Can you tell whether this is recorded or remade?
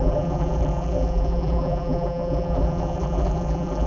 remade